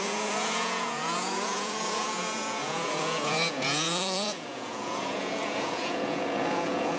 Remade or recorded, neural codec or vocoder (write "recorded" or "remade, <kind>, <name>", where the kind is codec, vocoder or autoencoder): remade, vocoder, Vocos